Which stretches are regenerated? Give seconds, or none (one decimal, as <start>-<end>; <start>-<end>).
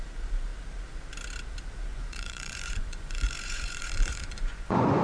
1.9-5.0